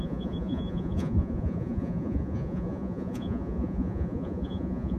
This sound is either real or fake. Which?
fake